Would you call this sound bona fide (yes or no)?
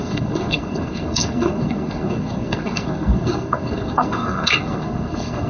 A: no